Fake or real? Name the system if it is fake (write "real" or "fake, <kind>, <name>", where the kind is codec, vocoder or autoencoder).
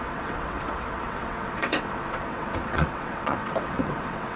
fake, vocoder, WaveNeXt